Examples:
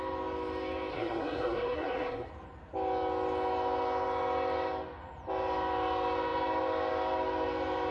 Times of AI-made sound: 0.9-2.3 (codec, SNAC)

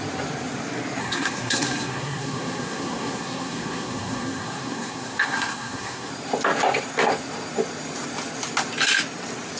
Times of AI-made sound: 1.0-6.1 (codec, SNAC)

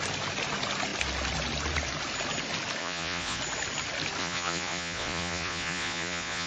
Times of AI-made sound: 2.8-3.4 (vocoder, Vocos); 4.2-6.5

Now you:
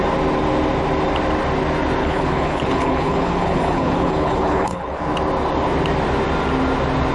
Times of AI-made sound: 2.0-5.0 (codec, HILCodec)

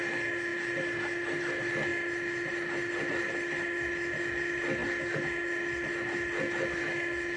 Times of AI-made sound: none

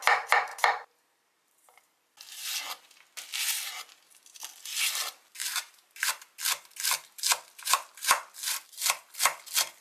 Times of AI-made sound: 0.5-1.8 (vocoder, BigVGAN v2); 5.4-6.1

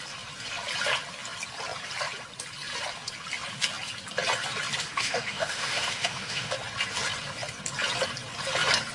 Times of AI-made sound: 4.8-6.5 (autoencoder, DAC-VAE)

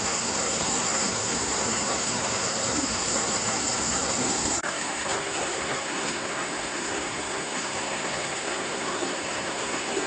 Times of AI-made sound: 0.0-10.1 (codec, SNAC)